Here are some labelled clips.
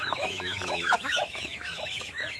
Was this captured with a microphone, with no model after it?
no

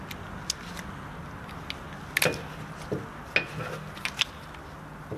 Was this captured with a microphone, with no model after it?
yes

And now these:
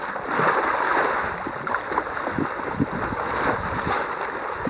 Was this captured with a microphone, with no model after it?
yes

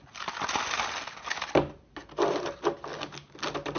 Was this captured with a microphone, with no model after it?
yes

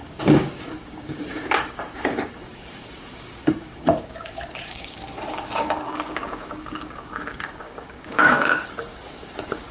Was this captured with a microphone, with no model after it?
no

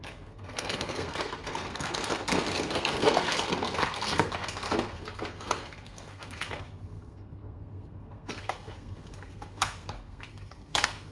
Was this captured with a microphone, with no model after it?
no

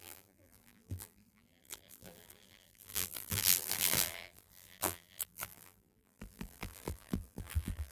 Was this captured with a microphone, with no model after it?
no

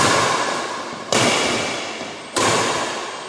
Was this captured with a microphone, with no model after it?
yes